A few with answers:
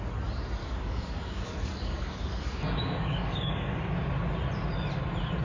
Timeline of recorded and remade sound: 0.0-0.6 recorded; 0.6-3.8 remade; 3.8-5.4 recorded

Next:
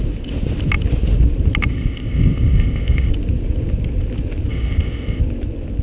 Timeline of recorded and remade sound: 0.0-1.7 recorded; 1.7-3.1 remade; 3.1-4.5 recorded; 4.5-5.2 remade; 5.2-5.8 recorded